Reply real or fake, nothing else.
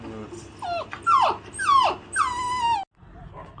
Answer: real